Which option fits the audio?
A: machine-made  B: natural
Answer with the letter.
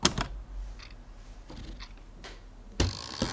B